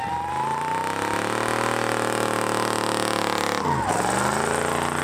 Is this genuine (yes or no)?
yes